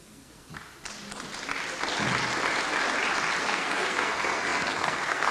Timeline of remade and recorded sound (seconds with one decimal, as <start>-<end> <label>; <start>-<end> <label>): 0.0-0.5 remade; 0.5-3.4 recorded; 3.4-5.3 remade